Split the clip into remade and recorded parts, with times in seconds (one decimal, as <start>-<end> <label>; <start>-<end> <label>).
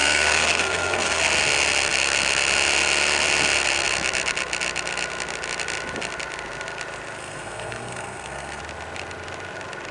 0.0-1.2 remade; 1.2-7.2 recorded; 7.2-8.6 remade; 8.6-9.9 recorded